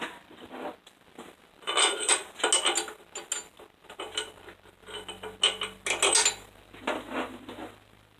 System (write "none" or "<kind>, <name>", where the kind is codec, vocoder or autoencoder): none